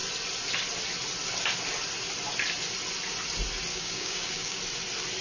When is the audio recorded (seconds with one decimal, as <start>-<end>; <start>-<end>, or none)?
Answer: 0.0-3.7; 4.6-5.2